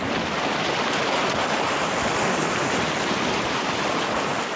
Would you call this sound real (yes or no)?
yes